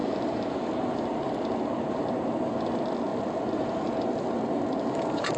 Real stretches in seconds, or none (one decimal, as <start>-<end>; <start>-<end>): 2.1-3.1